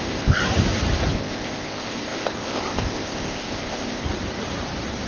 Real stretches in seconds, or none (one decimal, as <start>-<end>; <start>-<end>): 0.4-1.1; 4.0-5.1